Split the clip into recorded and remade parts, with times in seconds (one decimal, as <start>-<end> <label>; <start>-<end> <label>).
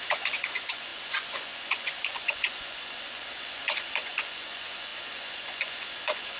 0.0-6.4 remade